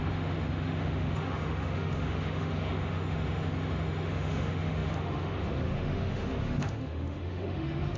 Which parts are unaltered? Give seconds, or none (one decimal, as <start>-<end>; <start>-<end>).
none